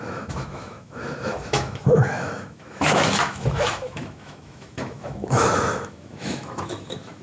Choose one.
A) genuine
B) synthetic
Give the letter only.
B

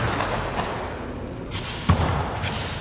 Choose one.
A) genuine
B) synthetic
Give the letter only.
A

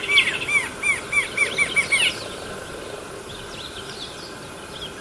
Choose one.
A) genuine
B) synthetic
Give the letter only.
A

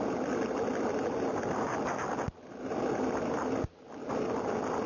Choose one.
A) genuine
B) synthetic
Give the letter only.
A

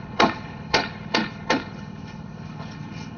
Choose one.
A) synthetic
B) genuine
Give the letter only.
A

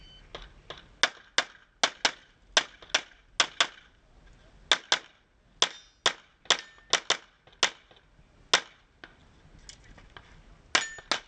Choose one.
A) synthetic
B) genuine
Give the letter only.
B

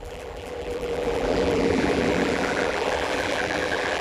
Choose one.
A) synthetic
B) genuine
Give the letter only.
A